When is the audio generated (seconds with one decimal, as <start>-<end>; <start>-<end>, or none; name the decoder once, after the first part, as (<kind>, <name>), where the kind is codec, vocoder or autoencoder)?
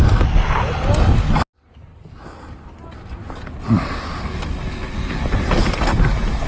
none